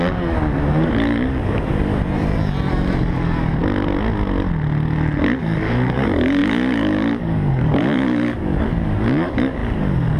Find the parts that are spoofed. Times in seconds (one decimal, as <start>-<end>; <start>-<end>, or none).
0.0-1.9; 2.7-3.6; 5.4-10.2